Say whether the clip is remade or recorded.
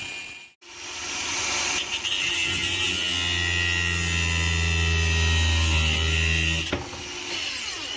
recorded